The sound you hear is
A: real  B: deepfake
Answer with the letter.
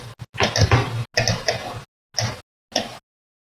A